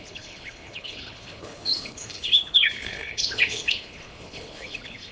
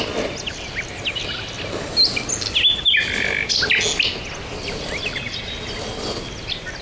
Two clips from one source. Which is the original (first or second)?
second